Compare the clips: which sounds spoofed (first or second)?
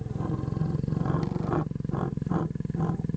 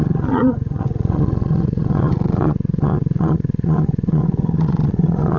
second